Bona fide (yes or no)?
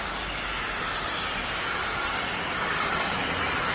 yes